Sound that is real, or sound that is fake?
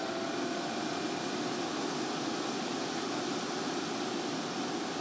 real